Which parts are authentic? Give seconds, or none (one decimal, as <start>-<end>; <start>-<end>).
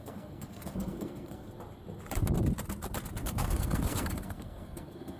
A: 1.5-3.2